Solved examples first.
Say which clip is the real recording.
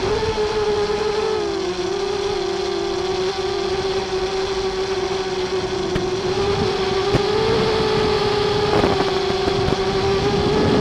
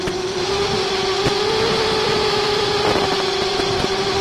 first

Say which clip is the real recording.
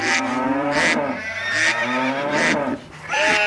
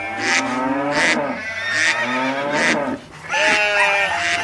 second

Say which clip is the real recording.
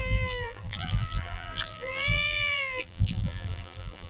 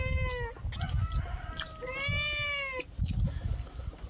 second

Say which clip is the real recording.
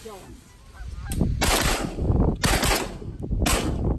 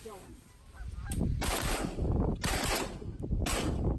first